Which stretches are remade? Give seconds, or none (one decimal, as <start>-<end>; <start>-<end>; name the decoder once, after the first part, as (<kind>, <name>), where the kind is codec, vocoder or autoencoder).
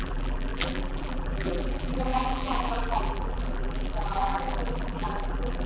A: 0.0-5.7 (vocoder, BigVGAN v2)